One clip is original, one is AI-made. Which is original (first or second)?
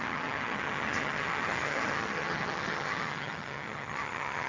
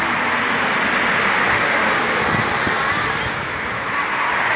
second